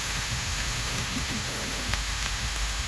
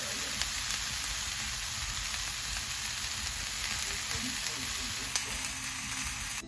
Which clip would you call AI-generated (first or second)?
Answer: first